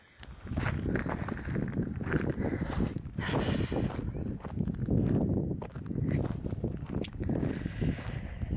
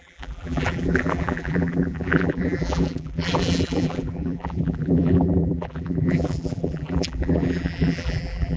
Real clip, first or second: first